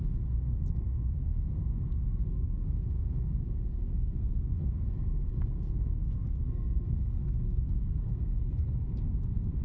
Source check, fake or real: fake